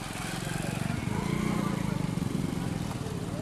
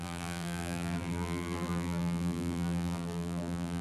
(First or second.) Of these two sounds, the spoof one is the second